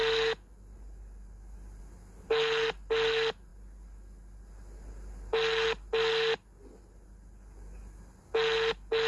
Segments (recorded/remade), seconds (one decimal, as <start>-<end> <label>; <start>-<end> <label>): 0.0-9.1 recorded